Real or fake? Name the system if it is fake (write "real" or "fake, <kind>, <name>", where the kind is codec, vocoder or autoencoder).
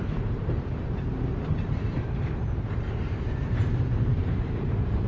fake, vocoder, BigVGAN v2